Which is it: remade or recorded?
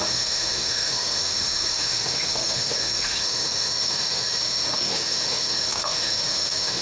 remade